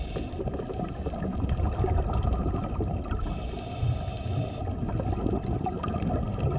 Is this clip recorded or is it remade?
recorded